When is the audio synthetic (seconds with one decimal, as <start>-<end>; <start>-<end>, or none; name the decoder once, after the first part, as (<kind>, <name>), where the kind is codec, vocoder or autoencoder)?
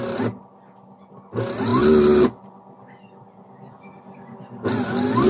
none